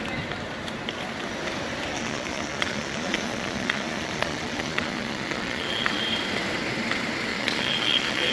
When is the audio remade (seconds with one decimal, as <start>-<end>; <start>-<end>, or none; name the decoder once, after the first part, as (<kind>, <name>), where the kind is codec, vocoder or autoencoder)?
1.9-6.0 (vocoder, Vocos); 7.3-8.3